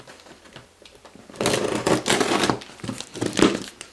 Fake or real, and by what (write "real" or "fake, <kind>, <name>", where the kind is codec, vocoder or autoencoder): real